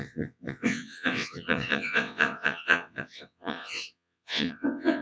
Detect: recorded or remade remade